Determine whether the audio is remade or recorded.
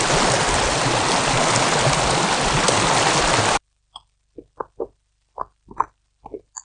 recorded